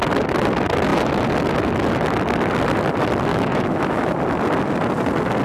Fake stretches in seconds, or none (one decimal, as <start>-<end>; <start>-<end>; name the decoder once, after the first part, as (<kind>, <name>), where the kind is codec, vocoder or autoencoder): 3.3-4.1 (autoencoder, DAC-VAE)